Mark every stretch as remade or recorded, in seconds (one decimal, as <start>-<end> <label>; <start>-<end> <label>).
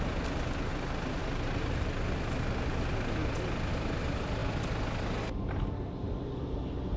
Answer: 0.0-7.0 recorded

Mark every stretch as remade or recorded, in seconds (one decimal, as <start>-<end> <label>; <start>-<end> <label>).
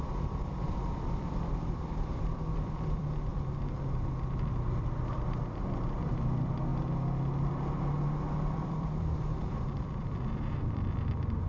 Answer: 0.0-6.7 remade; 6.7-8.5 recorded; 8.5-11.5 remade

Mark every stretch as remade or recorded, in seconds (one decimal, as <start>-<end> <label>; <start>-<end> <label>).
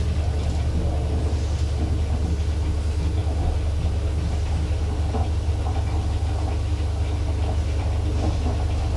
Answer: 0.0-9.0 recorded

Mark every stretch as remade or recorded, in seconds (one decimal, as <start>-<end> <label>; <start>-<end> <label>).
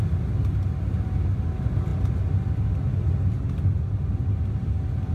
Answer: 0.0-5.1 recorded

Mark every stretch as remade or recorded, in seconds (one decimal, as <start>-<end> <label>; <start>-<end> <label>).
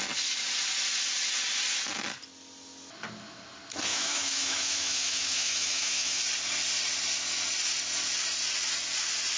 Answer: 0.0-3.9 recorded; 3.9-6.2 remade; 6.2-9.4 recorded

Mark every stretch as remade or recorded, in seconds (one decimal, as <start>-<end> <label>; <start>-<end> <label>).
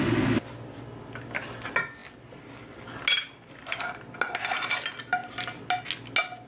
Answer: 0.0-6.5 recorded